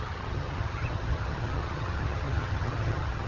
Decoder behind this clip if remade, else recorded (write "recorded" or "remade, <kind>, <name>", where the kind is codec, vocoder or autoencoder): remade, vocoder, HiFi-GAN